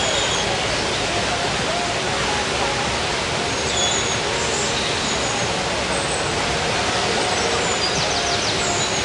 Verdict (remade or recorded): recorded